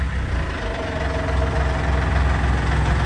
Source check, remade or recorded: recorded